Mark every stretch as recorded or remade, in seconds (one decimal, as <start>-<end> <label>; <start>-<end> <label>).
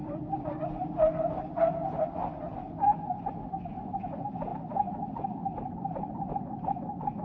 0.0-1.6 remade; 1.6-7.2 recorded